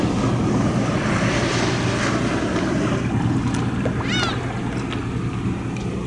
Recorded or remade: recorded